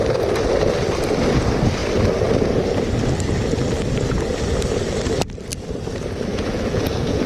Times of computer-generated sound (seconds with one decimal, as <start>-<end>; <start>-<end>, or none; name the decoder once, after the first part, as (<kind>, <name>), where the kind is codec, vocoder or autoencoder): 6.3-7.3 (vocoder, Vocos)